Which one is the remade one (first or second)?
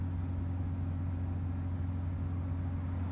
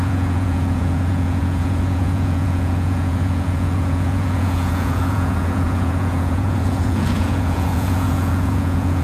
second